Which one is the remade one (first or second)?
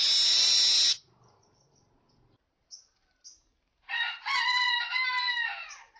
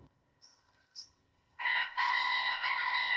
second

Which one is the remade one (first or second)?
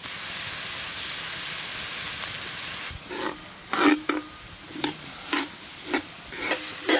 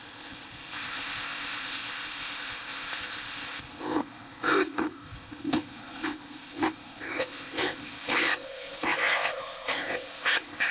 second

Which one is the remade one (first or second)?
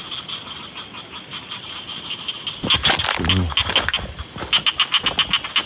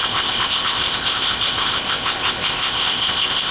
second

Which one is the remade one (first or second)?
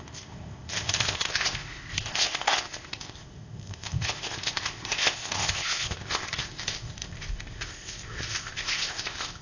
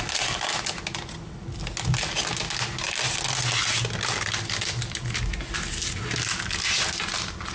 first